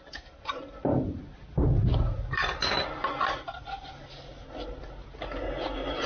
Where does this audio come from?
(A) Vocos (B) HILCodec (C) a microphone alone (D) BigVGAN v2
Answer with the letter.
C